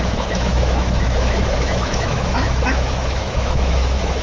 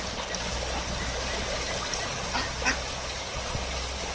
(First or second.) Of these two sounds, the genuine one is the second